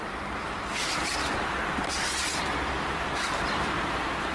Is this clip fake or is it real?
real